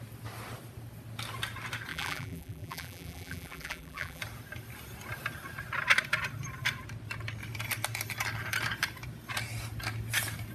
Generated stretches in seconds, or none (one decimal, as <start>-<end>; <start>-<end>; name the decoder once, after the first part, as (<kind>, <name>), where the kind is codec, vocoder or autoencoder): 1.9-4.2 (vocoder, BigVGAN v2)

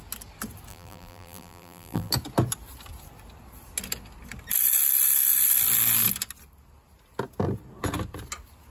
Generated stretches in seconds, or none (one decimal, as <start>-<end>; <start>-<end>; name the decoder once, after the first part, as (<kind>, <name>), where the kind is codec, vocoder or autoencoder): 0.7-2.1 (vocoder, BigVGAN v2)

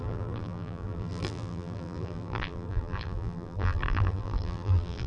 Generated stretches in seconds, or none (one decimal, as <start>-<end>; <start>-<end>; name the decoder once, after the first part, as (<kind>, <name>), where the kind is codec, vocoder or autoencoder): 0.0-5.1 (vocoder, BigVGAN v2)

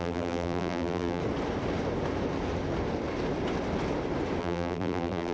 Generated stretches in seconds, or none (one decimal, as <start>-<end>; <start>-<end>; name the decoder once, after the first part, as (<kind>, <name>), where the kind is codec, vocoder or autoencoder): 0.0-1.2 (vocoder, BigVGAN v2); 4.4-5.3

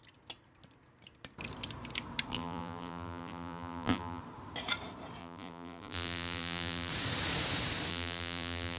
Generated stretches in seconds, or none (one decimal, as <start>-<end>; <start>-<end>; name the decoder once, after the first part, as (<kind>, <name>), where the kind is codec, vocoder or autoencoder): 2.3-4.2 (vocoder, BigVGAN v2); 5.2-6.9; 7.9-8.8

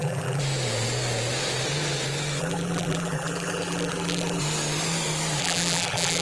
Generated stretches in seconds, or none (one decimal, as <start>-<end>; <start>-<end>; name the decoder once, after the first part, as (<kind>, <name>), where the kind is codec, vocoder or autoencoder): 0.0-0.4 (vocoder, BigVGAN v2); 2.4-4.4; 5.4-6.2

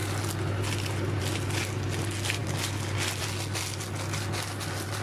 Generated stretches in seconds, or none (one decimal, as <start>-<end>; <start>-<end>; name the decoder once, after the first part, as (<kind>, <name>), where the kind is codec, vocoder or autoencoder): none